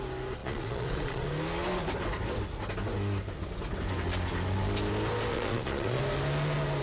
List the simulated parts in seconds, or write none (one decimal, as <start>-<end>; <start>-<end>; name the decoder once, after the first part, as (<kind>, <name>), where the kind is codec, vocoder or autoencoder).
0.4-1.3 (vocoder, Vocos); 5.3-6.0